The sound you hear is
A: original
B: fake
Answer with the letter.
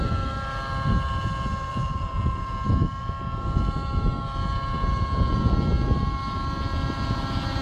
A